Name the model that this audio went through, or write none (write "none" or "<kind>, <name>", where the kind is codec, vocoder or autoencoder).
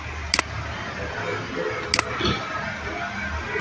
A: none